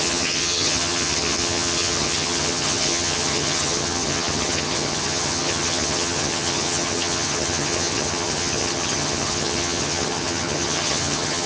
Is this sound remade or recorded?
remade